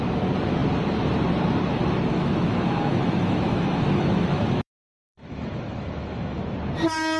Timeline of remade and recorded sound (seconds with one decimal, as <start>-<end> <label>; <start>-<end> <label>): 0.0-2.1 recorded; 2.1-6.4 remade; 6.4-7.2 recorded